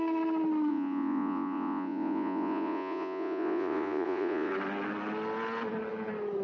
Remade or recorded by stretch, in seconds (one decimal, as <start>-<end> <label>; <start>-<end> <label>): 0.0-0.7 recorded; 0.7-4.5 remade; 4.5-6.4 recorded